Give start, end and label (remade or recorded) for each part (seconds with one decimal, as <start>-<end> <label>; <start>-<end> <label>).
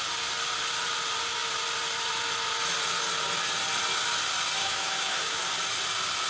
0.0-4.6 recorded; 4.6-5.4 remade; 5.4-6.3 recorded